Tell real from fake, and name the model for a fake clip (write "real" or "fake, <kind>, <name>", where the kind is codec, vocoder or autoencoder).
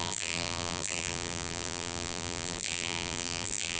fake, vocoder, BigVGAN v2